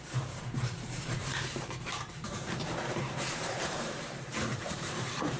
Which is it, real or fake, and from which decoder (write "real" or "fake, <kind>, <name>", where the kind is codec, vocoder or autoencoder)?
fake, vocoder, BigVGAN v2